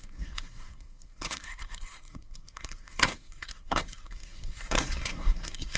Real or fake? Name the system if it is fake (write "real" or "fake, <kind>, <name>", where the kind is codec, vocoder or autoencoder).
fake, codec, SNAC